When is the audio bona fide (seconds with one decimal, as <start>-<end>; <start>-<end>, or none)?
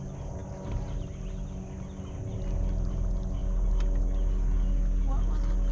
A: 0.0-5.7